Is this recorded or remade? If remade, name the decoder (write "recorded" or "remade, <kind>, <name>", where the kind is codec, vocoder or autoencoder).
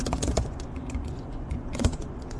remade, vocoder, Vocos